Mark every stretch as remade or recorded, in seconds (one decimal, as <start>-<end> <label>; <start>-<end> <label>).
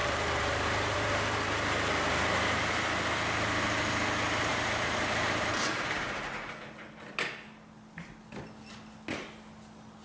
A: 0.0-2.6 remade; 2.6-4.5 recorded; 4.5-6.5 remade; 6.5-10.0 recorded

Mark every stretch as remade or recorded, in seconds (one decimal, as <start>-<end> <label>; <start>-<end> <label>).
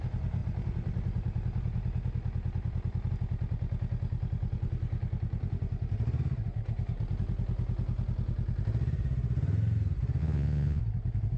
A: 0.0-10.2 recorded; 10.2-10.8 remade; 10.8-11.4 recorded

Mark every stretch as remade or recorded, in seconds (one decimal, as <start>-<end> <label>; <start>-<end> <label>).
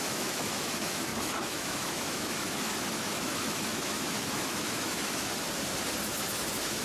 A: 0.0-5.3 remade; 5.3-6.0 recorded; 6.0-6.8 remade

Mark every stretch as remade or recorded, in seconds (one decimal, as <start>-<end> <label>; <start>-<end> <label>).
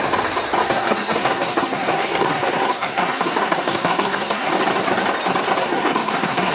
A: 0.0-0.6 recorded; 0.6-4.5 remade; 4.5-5.6 recorded; 5.6-6.5 remade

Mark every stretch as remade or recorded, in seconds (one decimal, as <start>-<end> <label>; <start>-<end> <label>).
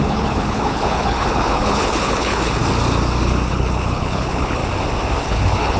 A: 0.0-2.6 remade; 2.6-3.5 recorded; 3.5-4.6 remade; 4.6-5.2 recorded; 5.2-5.8 remade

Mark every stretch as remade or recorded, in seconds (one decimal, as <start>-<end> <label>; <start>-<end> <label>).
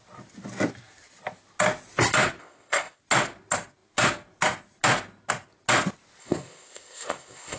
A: 0.0-2.4 recorded; 2.4-3.0 remade; 3.0-6.2 recorded; 6.2-7.6 remade